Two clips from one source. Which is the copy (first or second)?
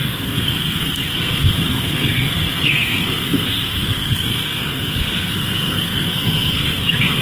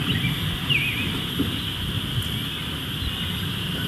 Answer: first